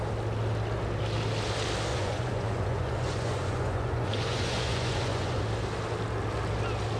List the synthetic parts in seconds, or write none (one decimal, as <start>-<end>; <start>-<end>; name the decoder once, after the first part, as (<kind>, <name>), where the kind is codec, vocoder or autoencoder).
1.9-5.4 (vocoder, Vocos)